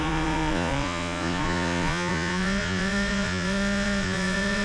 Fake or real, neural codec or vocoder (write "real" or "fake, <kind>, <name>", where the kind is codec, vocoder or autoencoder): fake, vocoder, Vocos